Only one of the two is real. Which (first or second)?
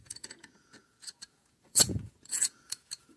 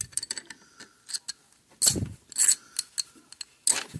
second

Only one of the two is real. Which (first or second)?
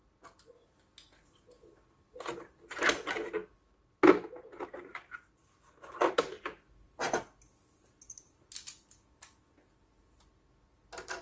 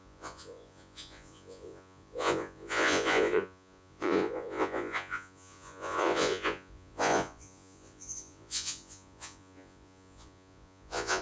first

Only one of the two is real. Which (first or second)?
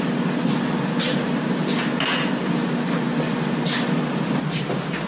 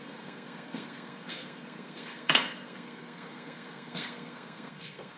first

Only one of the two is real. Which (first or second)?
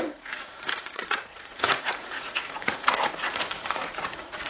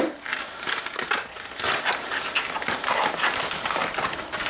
second